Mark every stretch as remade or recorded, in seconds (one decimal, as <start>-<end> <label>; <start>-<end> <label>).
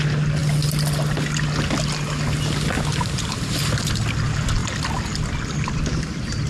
0.0-6.5 recorded